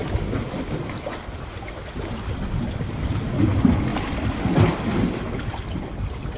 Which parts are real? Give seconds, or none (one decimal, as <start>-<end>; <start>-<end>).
0.0-6.4